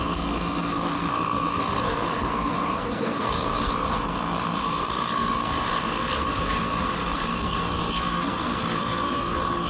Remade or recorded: remade